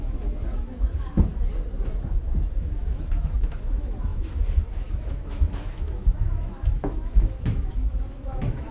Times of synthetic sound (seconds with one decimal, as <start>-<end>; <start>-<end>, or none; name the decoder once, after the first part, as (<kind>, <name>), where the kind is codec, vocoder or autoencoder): 0.0-1.3 (autoencoder, DAC-VAE); 2.6-8.7